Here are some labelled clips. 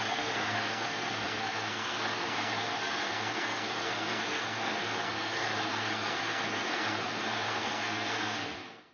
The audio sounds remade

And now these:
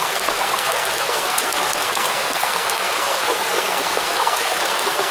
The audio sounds remade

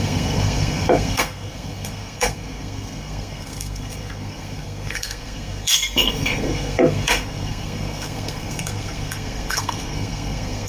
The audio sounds remade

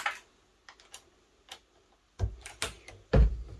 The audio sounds recorded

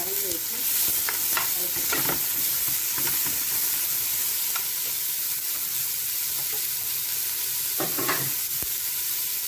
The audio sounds recorded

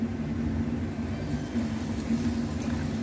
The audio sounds recorded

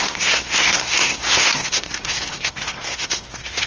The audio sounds remade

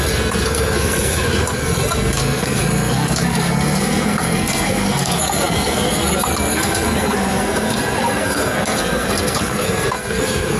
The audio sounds remade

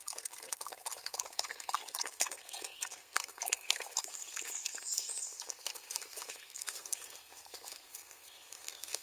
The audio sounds remade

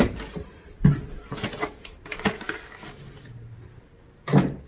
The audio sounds recorded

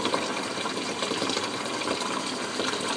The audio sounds recorded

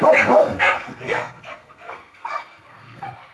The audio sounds remade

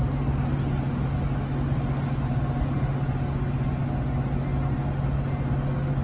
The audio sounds recorded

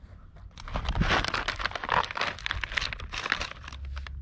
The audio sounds recorded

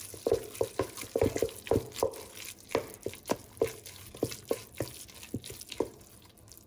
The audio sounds recorded